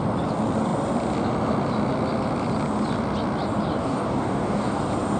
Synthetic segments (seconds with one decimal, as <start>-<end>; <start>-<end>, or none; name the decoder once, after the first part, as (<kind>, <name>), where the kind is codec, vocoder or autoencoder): 3.8-4.8 (codec, DAC)